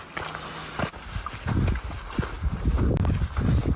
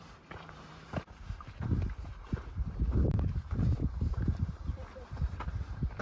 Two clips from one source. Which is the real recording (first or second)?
first